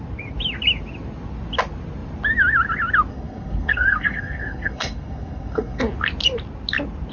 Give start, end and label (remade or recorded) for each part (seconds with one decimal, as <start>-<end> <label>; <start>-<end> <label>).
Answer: 0.0-3.1 recorded; 3.1-5.8 remade; 5.8-7.1 recorded